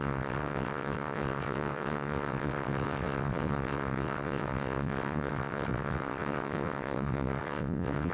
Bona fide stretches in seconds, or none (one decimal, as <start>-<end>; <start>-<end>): none